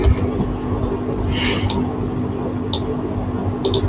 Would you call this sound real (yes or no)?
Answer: yes